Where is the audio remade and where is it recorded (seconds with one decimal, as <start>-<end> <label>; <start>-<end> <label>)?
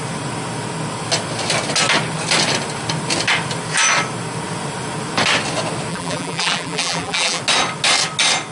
0.0-5.9 recorded; 5.9-7.4 remade; 7.4-8.5 recorded